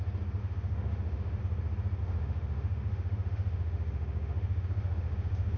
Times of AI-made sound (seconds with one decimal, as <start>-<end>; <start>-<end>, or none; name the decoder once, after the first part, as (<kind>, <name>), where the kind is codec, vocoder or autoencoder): 0.4-1.4 (autoencoder, DAC-VAE); 2.0-5.6